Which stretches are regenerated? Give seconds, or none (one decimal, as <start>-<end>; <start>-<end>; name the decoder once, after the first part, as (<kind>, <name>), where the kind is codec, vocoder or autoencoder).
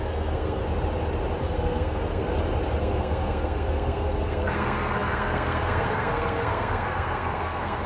0.0-0.6 (codec, SNAC); 1.4-2.3; 2.8-7.9